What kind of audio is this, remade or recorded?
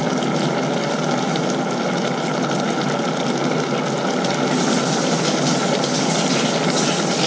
recorded